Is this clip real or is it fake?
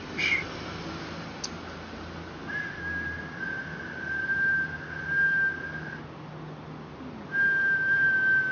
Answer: real